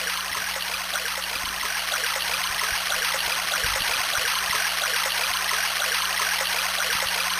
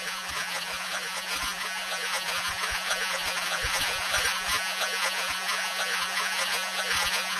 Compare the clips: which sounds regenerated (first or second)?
second